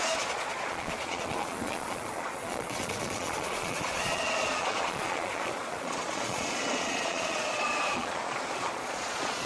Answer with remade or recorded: remade